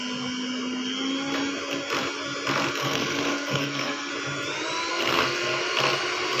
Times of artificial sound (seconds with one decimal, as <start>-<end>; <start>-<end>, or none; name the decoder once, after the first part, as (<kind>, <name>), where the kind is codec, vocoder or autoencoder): 2.8-4.1 (codec, SNAC); 4.9-5.6